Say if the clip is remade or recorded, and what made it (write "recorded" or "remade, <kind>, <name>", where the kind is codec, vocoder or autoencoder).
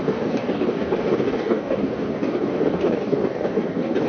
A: remade, codec, DAC